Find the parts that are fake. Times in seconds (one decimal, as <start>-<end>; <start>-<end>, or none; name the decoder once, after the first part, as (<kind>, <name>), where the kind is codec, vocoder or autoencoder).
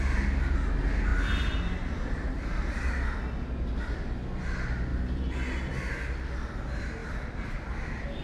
1.1-2.9 (vocoder, BigVGAN v2); 4.9-5.9; 7.0-8.2